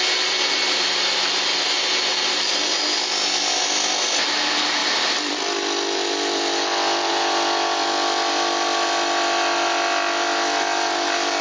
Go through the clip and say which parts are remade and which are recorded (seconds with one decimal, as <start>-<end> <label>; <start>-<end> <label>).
0.0-4.8 recorded; 4.8-7.1 remade; 7.1-11.4 recorded